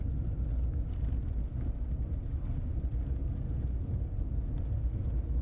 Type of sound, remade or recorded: recorded